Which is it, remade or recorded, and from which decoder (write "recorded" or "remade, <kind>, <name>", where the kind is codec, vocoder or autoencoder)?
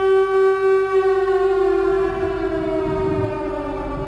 recorded